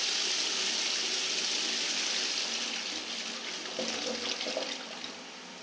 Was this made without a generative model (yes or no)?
yes